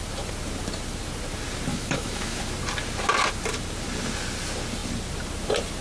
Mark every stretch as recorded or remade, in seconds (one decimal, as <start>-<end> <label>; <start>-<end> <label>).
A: 0.0-1.7 recorded; 1.7-2.4 remade; 2.4-5.8 recorded

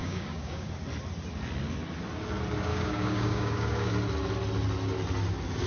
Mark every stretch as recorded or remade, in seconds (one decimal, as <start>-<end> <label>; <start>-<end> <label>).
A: 0.0-0.7 remade; 0.7-2.7 recorded; 2.7-3.9 remade; 3.9-5.7 recorded

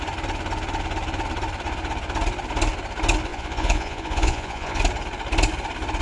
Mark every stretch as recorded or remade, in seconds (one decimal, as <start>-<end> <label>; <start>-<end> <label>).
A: 0.0-3.3 recorded; 3.3-4.8 remade; 4.8-6.0 recorded

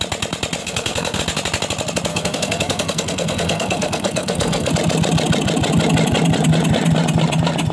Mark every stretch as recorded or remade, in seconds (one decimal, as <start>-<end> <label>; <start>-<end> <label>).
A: 0.0-0.6 recorded; 0.6-1.2 remade; 1.2-2.1 recorded; 2.1-4.7 remade; 4.7-7.7 recorded

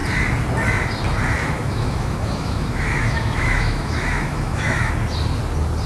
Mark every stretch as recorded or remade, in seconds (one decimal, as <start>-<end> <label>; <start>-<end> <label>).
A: 0.0-1.4 recorded; 1.4-4.9 remade; 4.9-5.9 recorded

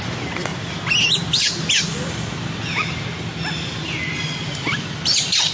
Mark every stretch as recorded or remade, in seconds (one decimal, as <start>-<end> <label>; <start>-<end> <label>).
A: 0.0-5.5 recorded

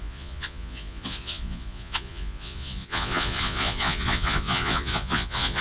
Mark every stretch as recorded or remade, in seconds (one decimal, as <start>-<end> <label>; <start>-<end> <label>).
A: 0.0-5.6 remade

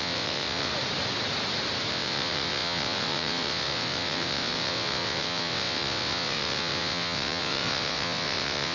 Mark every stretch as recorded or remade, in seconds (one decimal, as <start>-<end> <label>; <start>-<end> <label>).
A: 0.0-0.7 remade; 0.7-1.9 recorded; 1.9-8.7 remade